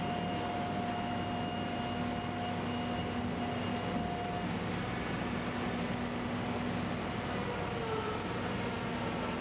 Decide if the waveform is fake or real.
real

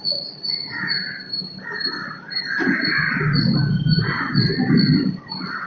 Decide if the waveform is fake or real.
real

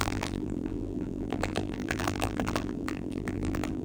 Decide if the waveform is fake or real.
fake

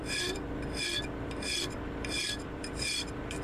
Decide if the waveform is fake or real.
fake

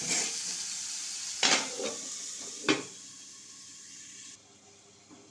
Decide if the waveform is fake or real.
real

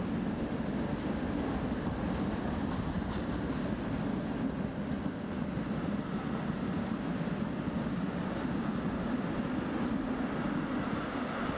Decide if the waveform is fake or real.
real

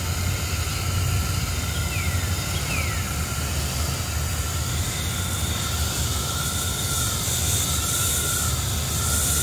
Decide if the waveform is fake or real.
real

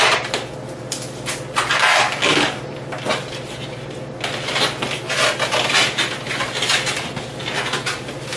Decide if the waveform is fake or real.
real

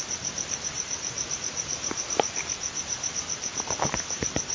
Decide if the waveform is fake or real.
fake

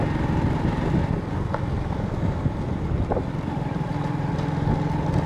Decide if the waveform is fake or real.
real